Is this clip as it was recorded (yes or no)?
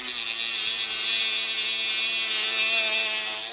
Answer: yes